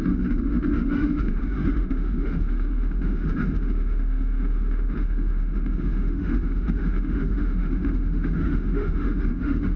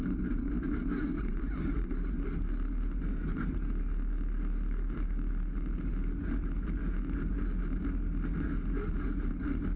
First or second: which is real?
second